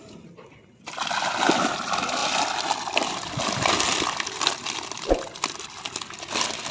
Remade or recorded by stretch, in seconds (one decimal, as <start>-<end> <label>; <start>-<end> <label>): 0.0-6.7 recorded